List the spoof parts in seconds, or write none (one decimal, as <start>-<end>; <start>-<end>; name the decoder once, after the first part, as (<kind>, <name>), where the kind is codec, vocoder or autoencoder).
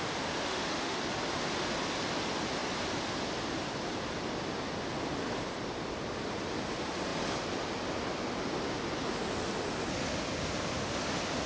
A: 0.4-1.0 (autoencoder, DAC-VAE)